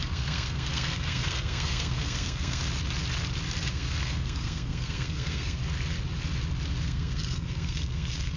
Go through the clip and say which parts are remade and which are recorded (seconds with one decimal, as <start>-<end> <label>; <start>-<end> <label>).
0.0-2.6 remade; 2.6-3.7 recorded; 3.7-5.6 remade; 5.6-6.8 recorded; 6.8-8.4 remade